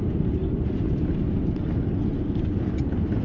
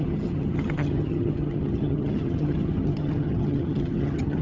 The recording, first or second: first